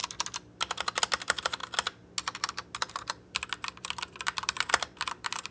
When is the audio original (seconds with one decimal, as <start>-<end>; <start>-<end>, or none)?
0.0-1.0; 1.6-2.9